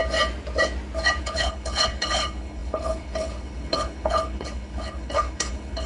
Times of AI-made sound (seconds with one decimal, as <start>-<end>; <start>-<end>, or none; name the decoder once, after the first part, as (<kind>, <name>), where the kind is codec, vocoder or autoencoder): 1.2-5.9 (codec, HILCodec)